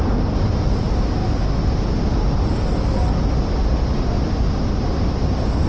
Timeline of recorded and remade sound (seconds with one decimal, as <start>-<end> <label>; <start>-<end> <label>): 0.0-5.7 recorded